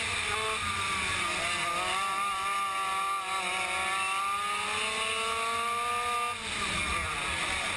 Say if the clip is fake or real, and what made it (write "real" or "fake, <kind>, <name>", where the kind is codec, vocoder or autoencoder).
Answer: real